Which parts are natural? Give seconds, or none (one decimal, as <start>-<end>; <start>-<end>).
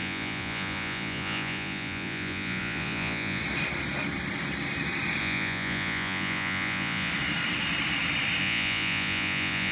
3.4-5.2; 7.1-8.4